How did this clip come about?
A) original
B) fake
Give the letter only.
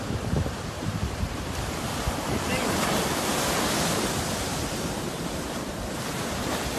B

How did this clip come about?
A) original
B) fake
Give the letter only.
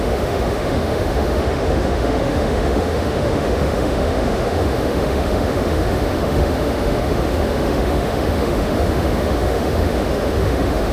B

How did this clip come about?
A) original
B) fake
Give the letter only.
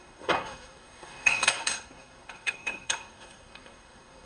B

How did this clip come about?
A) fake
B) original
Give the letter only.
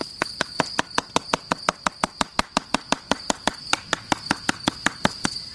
B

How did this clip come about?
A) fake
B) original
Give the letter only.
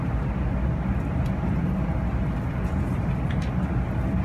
B